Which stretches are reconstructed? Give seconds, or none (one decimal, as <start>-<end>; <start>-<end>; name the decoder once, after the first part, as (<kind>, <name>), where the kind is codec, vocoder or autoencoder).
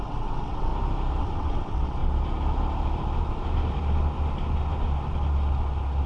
0.0-0.7 (vocoder, WaveNeXt); 1.2-2.0